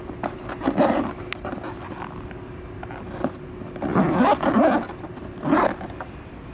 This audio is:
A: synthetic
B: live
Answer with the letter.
B